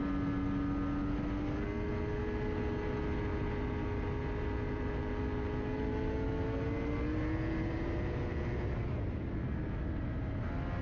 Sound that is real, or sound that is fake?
real